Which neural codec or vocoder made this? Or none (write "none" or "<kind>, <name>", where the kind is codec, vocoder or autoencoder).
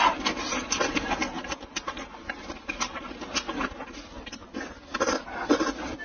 none